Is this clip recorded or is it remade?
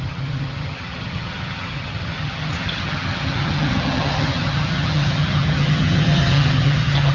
remade